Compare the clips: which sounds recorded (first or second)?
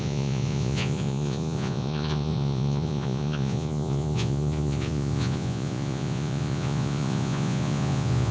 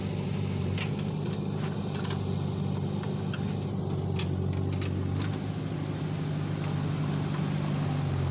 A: second